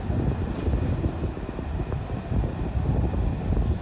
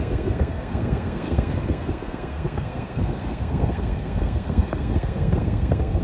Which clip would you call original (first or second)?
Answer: first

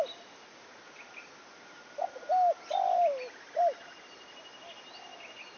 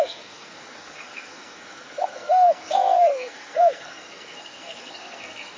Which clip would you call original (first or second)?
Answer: first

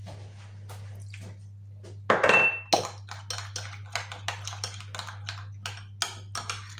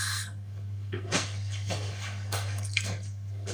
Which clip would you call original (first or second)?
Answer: first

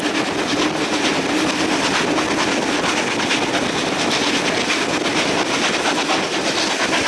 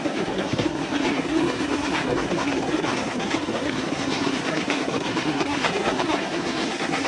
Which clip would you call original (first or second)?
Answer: first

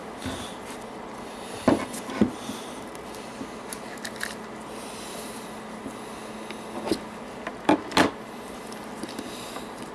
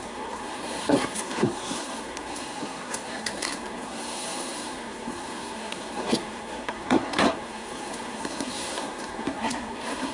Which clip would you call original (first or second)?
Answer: first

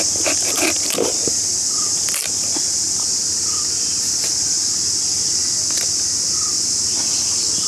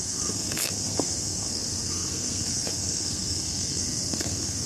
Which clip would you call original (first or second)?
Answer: first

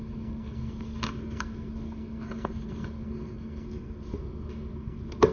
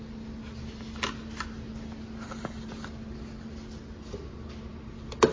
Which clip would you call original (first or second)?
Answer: second